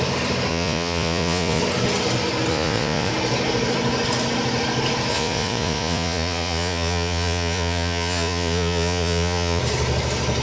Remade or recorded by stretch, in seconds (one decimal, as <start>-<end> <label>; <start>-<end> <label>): 0.0-0.5 recorded; 0.5-1.6 remade; 1.6-2.5 recorded; 2.5-3.1 remade; 3.1-5.1 recorded; 5.1-9.6 remade; 9.6-10.4 recorded